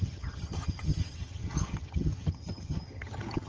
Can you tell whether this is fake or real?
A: fake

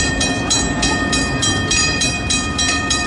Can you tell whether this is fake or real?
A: fake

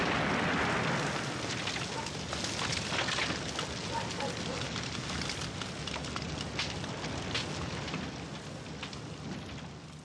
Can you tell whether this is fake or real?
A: real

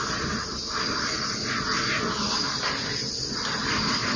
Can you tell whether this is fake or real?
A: real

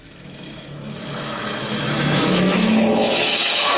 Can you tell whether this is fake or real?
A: fake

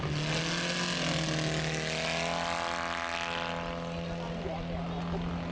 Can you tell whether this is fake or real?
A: real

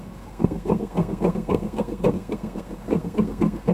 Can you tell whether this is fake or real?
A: fake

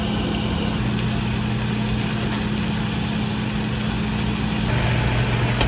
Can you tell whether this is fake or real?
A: real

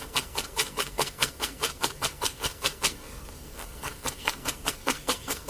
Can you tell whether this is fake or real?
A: fake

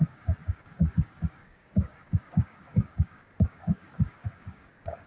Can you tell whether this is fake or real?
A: fake